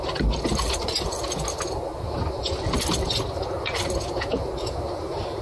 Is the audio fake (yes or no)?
no